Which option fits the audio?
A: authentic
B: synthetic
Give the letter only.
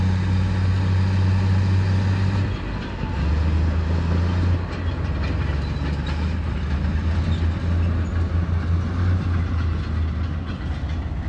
A